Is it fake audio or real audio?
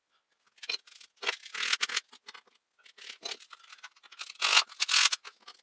real